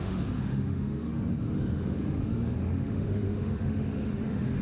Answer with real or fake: fake